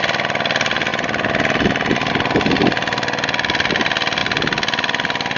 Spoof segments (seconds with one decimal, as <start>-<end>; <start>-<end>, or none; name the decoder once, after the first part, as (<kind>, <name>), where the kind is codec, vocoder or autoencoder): none